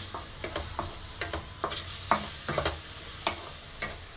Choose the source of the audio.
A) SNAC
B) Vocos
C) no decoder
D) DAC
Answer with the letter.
C